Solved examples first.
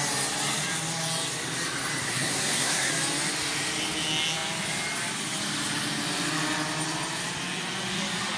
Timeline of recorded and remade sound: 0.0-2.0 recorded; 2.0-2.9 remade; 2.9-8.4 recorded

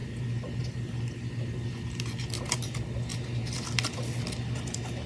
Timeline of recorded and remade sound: 0.0-5.1 recorded